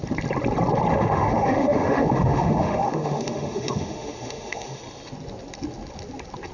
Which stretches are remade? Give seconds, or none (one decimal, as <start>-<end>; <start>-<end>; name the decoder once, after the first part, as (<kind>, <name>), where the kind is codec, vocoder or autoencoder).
0.9-4.8 (autoencoder, DAC-VAE)